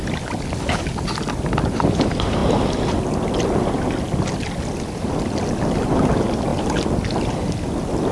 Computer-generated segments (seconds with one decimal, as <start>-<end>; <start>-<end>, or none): none